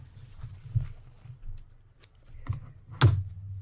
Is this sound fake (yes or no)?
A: no